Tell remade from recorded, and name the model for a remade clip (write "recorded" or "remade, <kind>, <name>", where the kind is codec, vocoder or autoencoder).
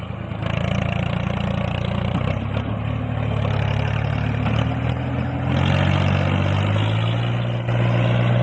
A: recorded